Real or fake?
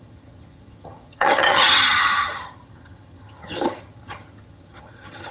fake